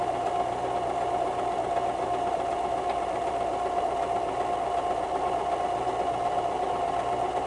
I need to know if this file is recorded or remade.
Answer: recorded